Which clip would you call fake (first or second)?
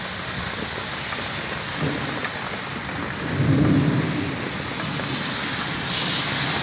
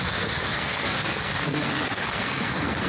second